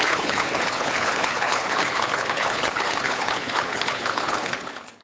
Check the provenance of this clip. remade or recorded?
remade